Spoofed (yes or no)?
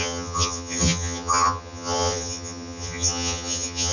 yes